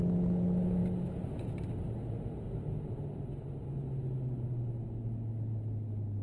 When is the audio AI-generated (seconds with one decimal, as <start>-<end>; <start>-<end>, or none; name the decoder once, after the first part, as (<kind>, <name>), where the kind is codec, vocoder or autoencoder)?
none